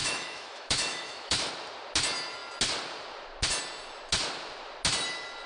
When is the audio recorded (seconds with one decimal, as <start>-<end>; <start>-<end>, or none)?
1.5-5.5